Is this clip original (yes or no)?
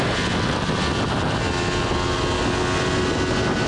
yes